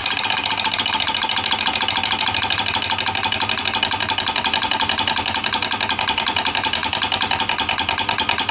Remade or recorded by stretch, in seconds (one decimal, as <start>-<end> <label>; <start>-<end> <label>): 0.0-8.5 recorded